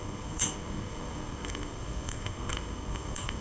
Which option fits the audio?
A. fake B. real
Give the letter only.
A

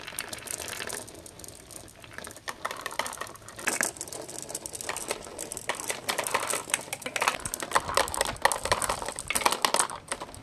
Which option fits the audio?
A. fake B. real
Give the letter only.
B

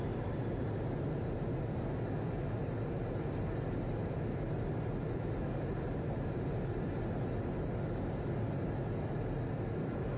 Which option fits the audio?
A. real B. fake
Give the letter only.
A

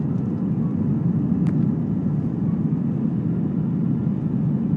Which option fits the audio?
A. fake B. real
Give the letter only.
B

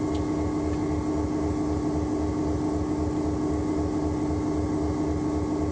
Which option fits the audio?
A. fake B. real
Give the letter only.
B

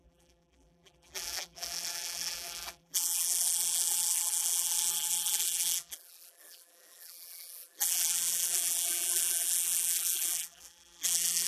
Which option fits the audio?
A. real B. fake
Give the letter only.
B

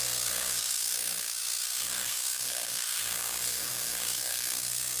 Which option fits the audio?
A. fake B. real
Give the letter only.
A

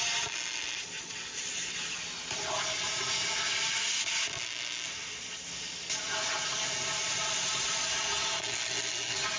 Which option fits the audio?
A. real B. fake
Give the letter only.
A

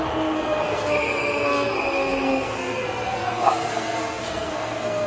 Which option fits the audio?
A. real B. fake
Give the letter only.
B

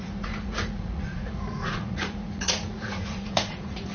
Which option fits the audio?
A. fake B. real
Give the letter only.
A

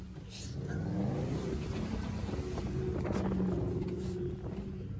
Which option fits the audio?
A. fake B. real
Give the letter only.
B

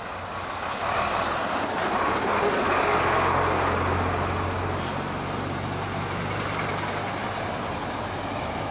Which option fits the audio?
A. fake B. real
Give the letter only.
B